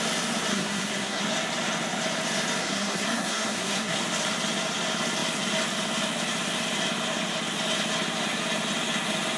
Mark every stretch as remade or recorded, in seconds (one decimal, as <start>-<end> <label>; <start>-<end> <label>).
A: 0.0-0.5 recorded; 0.5-1.2 remade; 1.2-2.6 recorded; 2.6-4.0 remade; 4.0-9.4 recorded